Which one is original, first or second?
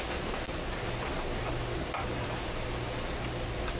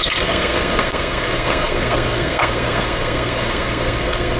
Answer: first